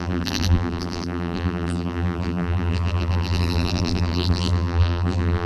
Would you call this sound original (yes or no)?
no